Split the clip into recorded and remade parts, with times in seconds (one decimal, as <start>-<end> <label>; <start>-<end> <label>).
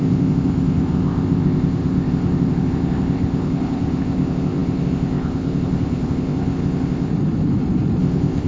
0.0-7.1 remade; 7.1-8.0 recorded; 8.0-8.5 remade